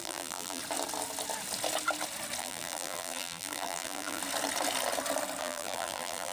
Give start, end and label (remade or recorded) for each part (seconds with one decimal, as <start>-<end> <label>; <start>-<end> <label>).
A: 0.0-0.6 remade; 0.6-2.4 recorded; 2.4-4.2 remade; 4.2-5.4 recorded; 5.4-6.3 remade